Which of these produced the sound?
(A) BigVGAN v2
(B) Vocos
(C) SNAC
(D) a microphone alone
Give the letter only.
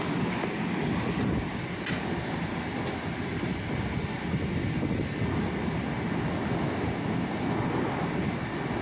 D